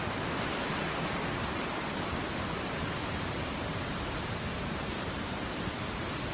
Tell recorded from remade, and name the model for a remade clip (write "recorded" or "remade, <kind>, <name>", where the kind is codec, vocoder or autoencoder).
recorded